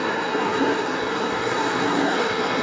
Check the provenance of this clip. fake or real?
fake